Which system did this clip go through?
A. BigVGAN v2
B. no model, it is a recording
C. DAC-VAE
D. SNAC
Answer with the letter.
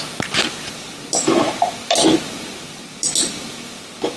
B